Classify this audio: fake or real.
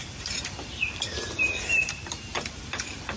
fake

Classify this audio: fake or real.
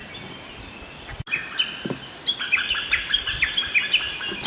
real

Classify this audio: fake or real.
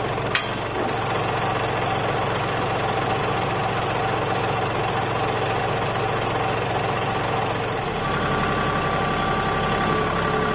real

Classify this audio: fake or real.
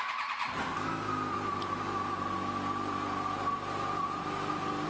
real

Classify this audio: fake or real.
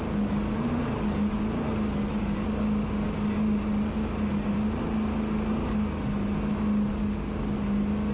real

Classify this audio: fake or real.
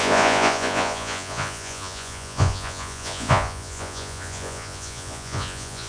fake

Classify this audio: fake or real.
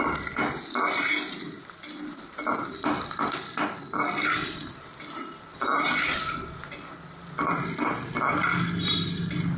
real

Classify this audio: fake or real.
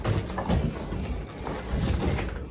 real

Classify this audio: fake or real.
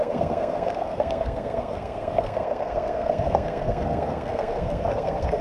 fake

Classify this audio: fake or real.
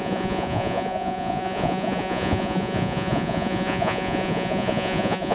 fake